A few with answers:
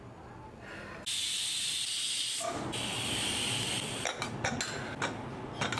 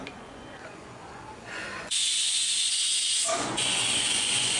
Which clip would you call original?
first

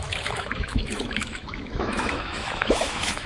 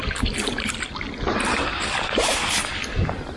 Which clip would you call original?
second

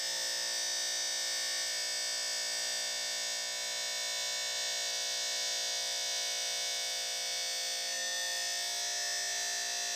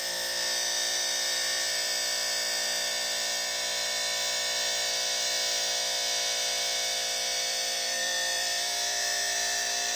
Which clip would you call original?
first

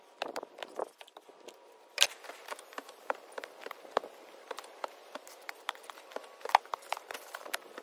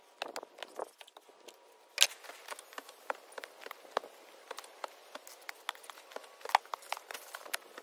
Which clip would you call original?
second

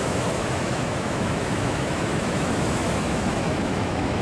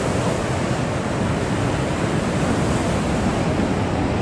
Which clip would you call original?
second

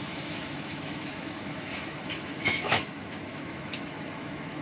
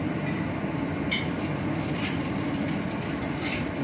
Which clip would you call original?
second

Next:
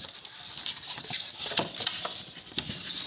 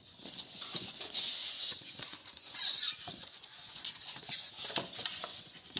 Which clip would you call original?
first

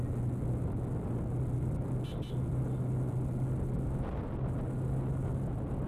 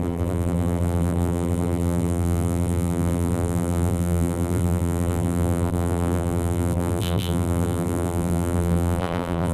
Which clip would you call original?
first